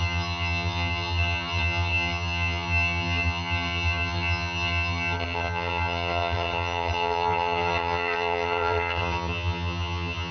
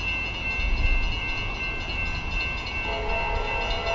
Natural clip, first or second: second